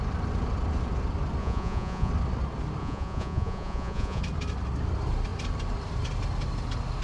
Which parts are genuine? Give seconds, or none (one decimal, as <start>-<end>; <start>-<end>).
0.0-1.4; 2.1-2.8; 4.2-7.0